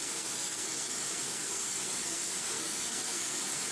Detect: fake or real fake